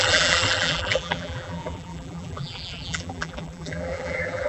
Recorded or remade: remade